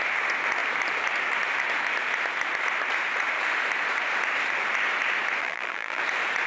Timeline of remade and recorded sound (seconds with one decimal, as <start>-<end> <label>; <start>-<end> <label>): 0.0-5.4 recorded; 5.4-6.0 remade; 6.0-6.5 recorded